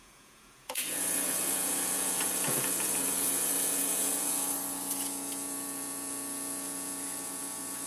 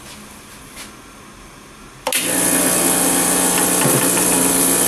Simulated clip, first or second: first